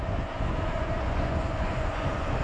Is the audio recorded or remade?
remade